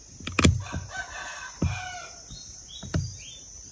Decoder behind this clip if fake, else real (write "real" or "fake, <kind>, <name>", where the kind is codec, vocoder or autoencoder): real